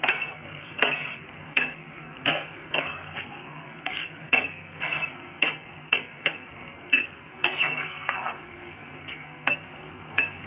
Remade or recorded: remade